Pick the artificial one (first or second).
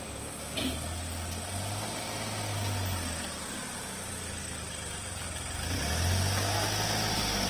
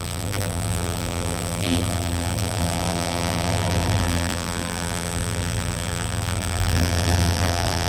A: second